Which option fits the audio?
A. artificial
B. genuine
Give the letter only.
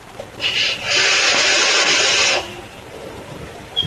A